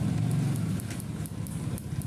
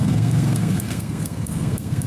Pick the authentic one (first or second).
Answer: first